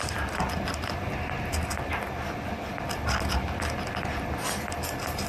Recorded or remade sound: recorded